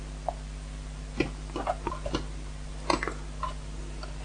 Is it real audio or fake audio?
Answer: real